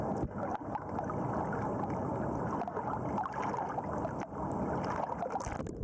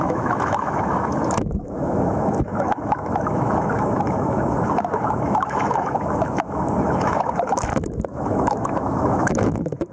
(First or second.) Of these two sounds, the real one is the first